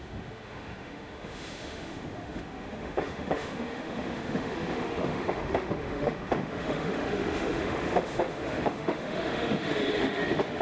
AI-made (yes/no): yes